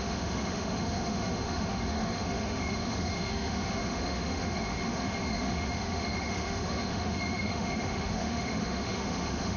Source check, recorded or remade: remade